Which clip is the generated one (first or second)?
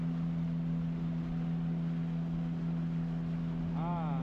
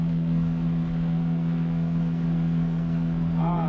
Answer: second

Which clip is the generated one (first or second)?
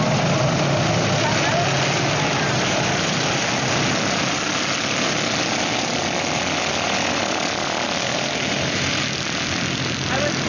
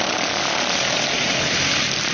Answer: second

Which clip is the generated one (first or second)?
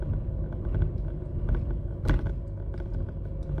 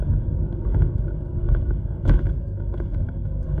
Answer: second